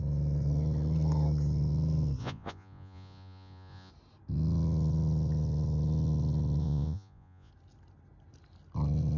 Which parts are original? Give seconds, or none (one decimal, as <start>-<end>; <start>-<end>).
0.0-2.2; 3.9-6.6; 7.5-9.2